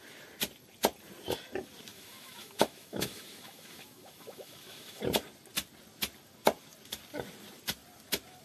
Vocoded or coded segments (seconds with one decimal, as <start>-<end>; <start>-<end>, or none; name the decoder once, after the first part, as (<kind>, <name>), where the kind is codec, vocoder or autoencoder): 1.9-5.0 (autoencoder, DAC-VAE)